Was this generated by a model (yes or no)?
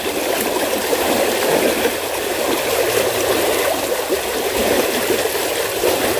no